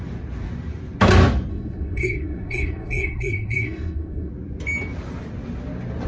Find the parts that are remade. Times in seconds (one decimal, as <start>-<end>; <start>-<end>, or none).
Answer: 1.5-4.3